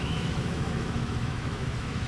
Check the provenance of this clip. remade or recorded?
remade